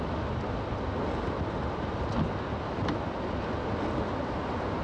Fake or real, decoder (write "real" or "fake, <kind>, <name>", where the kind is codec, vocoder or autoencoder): real